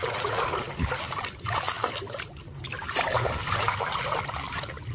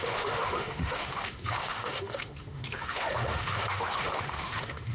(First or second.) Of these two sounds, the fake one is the second